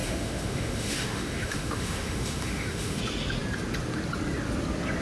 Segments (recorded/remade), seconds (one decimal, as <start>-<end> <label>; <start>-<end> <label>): 0.0-3.0 remade; 3.0-5.0 recorded